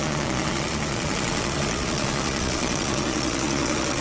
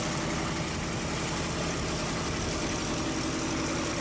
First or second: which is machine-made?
first